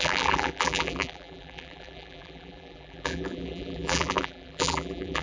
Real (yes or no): no